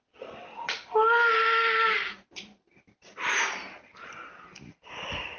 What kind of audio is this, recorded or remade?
recorded